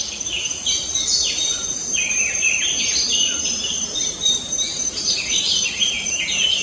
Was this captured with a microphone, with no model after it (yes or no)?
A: no